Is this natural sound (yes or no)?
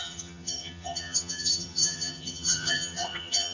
no